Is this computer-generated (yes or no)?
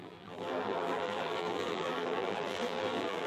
yes